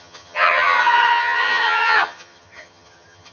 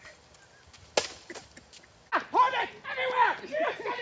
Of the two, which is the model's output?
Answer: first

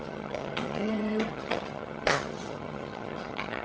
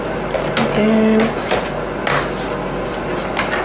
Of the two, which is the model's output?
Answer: first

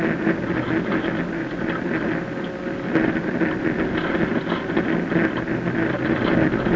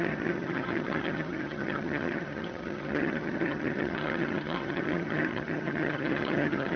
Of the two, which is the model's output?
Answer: second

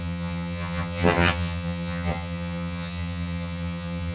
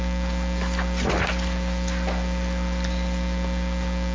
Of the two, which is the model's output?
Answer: first